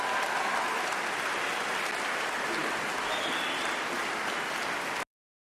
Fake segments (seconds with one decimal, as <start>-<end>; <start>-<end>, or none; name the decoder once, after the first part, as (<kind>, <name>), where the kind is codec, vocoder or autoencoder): none